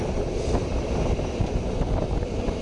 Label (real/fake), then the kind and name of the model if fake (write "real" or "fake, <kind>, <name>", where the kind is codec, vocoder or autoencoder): fake, vocoder, BigVGAN v2